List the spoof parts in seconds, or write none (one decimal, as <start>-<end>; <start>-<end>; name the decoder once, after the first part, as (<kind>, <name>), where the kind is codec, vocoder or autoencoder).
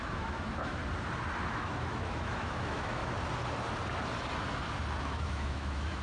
0.0-0.8 (autoencoder, DAC-VAE); 1.5-3.0; 5.0-6.0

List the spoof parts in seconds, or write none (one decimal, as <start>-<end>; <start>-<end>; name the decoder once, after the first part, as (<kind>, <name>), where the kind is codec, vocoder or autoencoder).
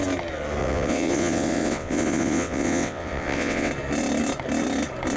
0.6-3.7 (vocoder, WaveNeXt)